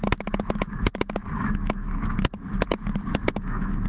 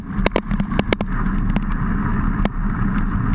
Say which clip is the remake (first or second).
first